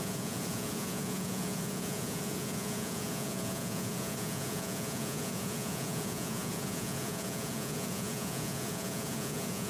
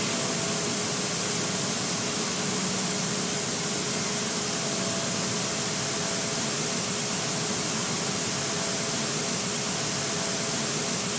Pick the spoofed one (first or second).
first